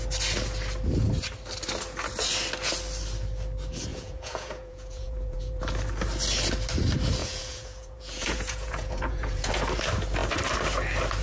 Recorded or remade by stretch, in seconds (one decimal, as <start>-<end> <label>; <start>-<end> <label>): 0.0-3.9 recorded; 3.9-5.6 remade; 5.6-7.2 recorded; 7.2-9.5 remade; 9.5-11.2 recorded